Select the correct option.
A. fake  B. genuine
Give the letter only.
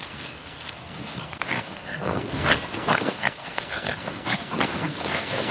A